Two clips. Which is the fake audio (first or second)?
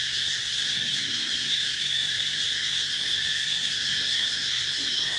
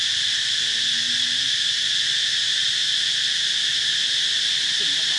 first